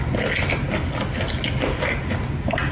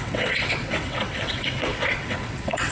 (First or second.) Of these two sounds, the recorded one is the first